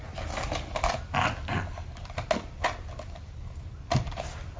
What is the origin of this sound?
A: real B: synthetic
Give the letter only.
A